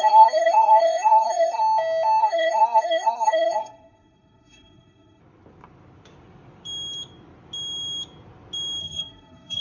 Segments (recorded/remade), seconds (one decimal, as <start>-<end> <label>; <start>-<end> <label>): 0.0-1.6 remade; 1.6-2.2 recorded; 2.2-5.2 remade; 5.2-8.8 recorded; 8.8-9.6 remade